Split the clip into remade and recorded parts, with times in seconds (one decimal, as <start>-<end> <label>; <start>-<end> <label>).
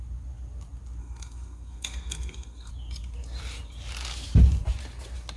0.0-1.0 recorded; 1.0-2.7 remade; 2.7-5.4 recorded